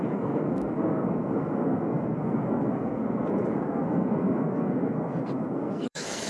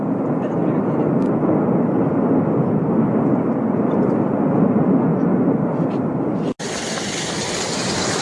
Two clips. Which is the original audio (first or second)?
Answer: second